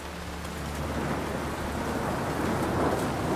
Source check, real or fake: real